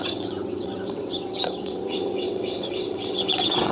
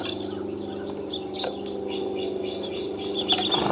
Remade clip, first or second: first